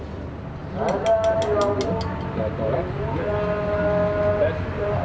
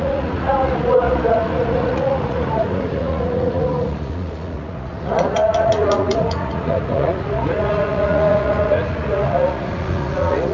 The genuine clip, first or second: first